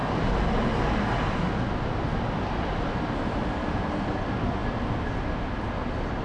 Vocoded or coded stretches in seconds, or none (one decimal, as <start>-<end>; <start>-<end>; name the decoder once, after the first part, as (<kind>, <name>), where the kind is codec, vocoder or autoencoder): none